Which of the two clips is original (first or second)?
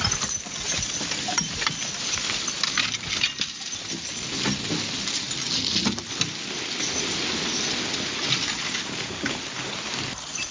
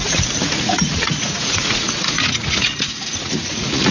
first